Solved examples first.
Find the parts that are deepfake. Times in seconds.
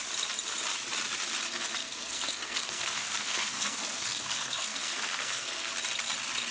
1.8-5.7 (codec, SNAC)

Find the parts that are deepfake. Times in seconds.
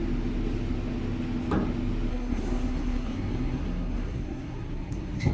2.1-5.3 (codec, SNAC)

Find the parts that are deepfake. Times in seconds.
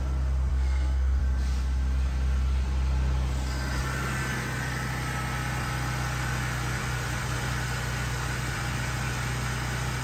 0.5-1.2 (codec, SNAC)